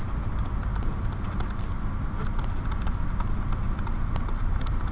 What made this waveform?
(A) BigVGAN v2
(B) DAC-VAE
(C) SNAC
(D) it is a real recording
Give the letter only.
D